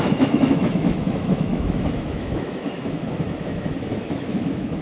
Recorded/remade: remade